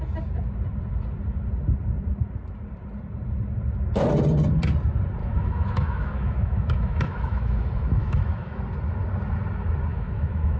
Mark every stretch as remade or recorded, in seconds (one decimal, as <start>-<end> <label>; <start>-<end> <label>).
0.0-5.2 recorded; 5.2-8.6 remade; 8.6-9.9 recorded; 9.9-10.6 remade